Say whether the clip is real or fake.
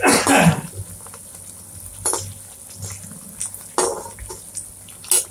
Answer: real